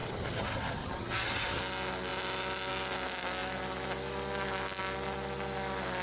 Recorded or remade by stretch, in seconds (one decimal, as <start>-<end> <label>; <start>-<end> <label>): 0.0-1.6 remade; 1.6-6.0 recorded